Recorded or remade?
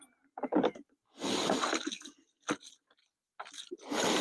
recorded